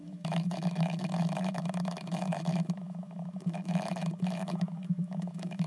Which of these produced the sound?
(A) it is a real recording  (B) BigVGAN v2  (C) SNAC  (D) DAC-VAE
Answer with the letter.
D